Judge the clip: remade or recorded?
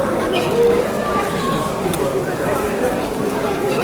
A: remade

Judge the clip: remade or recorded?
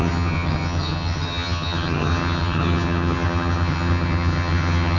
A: remade